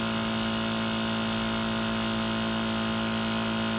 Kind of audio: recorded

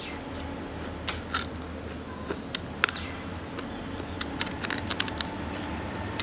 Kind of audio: recorded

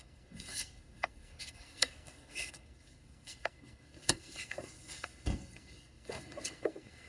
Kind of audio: remade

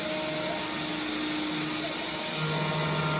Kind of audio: recorded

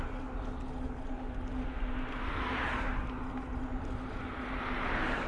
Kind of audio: recorded